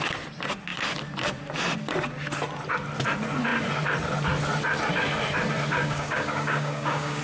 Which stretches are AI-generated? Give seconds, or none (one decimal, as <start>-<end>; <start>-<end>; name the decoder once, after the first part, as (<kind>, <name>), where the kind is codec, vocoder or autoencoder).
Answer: 5.8-7.2 (codec, DAC)